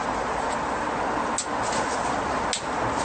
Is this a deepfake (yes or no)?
no